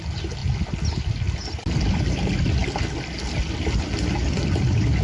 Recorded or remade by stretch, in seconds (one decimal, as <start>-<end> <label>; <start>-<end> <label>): 0.0-5.0 recorded